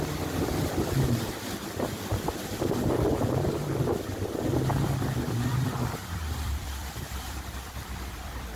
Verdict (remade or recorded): remade